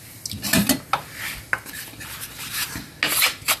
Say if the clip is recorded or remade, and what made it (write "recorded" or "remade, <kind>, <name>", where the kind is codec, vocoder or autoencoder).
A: recorded